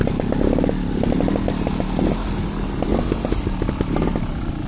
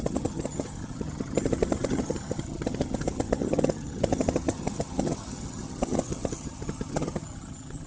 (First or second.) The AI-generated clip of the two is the second